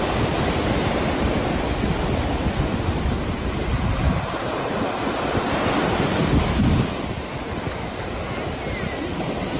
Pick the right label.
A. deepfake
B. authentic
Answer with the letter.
B